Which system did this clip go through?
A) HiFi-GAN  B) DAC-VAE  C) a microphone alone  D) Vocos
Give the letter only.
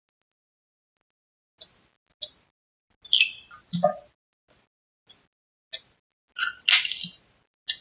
C